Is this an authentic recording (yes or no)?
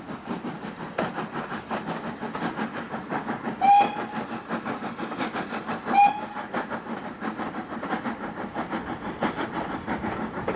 yes